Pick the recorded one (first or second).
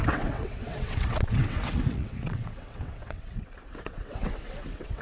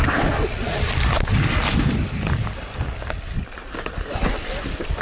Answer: second